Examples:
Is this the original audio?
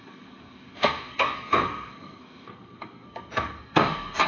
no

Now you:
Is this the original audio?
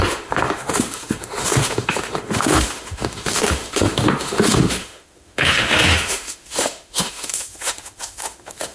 no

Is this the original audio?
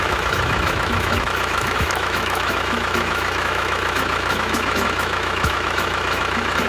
no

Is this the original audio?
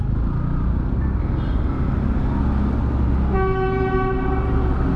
yes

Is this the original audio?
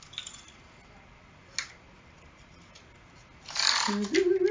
yes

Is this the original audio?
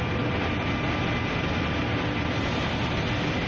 yes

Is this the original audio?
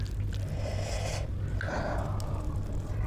yes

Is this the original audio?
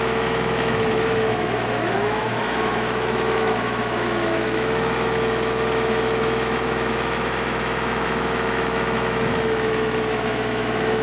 no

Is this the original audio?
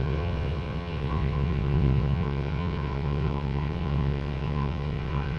no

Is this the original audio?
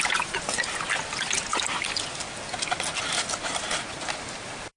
yes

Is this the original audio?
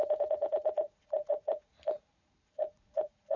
no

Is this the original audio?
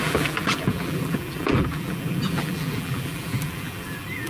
no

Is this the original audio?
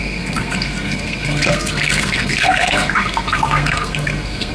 no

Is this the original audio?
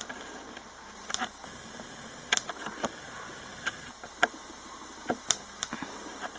yes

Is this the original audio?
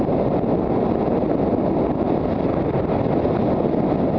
yes